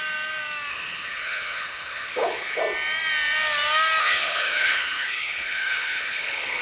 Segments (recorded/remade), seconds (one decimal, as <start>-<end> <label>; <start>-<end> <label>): 0.0-0.7 recorded; 0.7-2.6 remade; 2.6-4.0 recorded; 4.0-6.6 remade